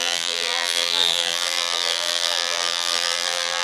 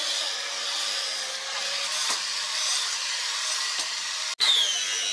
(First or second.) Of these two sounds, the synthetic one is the first